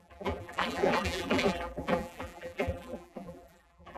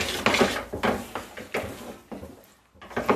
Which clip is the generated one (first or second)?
first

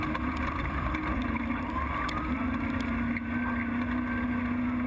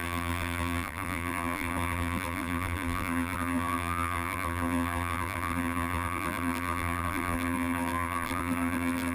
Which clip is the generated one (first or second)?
second